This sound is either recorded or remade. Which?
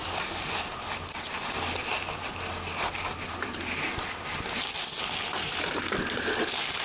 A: recorded